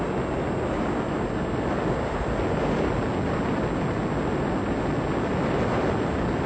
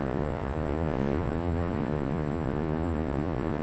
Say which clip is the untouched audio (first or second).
first